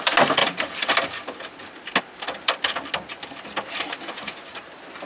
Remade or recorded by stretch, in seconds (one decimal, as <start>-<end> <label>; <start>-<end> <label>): 0.0-5.1 recorded

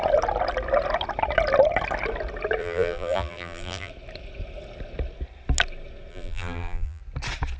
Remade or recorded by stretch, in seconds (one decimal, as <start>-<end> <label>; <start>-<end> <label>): 0.0-2.6 recorded; 2.6-3.9 remade; 3.9-6.1 recorded; 6.1-7.0 remade; 7.0-7.6 recorded

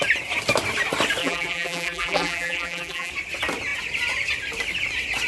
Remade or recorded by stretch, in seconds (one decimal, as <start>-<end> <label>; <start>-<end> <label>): 0.0-1.2 recorded; 1.2-3.1 remade; 3.1-5.3 recorded

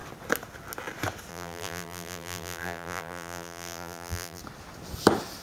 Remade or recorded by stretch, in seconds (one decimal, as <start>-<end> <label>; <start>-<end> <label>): 0.0-1.3 recorded; 1.3-4.4 remade; 4.4-5.4 recorded

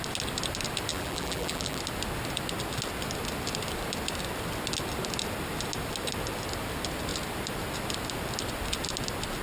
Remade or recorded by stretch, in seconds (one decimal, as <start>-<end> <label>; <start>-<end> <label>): 0.0-0.9 recorded; 0.9-1.8 remade; 1.8-9.4 recorded